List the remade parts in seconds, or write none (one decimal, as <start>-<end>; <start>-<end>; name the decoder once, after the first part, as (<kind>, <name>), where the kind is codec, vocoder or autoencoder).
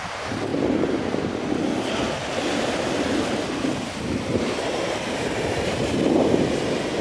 4.3-6.3 (vocoder, BigVGAN v2)